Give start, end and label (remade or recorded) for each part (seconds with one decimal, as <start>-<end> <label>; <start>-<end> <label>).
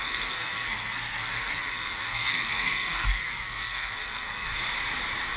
0.0-4.5 remade; 4.5-5.4 recorded